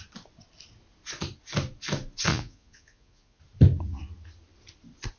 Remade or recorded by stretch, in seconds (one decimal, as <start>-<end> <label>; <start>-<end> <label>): 0.0-2.3 recorded; 2.3-3.4 remade; 3.4-5.2 recorded